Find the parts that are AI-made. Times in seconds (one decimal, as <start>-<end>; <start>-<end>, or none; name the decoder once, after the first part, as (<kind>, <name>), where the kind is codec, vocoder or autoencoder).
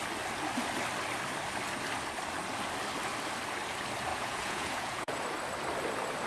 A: 4.1-5.2 (vocoder, Vocos)